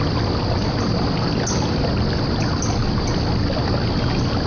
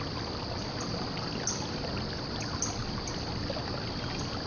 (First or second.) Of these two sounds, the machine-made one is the second